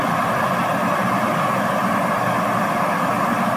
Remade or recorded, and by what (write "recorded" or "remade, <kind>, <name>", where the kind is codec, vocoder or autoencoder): remade, vocoder, BigVGAN v2